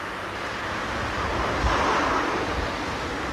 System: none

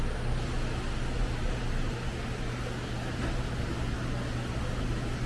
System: none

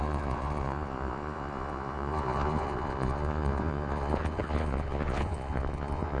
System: vocoder, Vocos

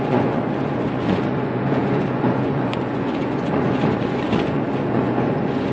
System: vocoder, Vocos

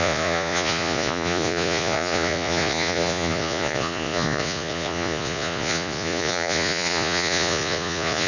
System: vocoder, Vocos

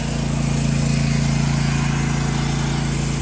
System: none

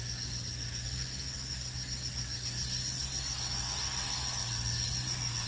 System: none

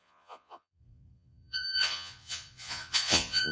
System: vocoder, Vocos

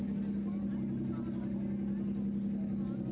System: none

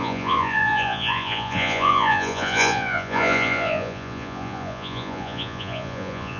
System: vocoder, Vocos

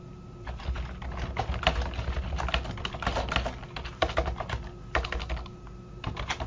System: none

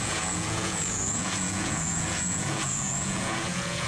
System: vocoder, Vocos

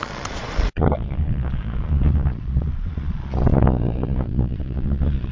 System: vocoder, Vocos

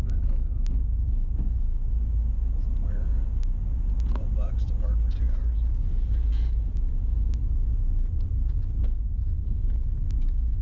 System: none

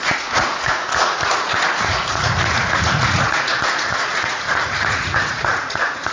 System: vocoder, Vocos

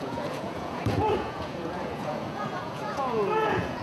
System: vocoder, Vocos